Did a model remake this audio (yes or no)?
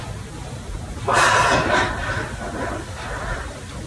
no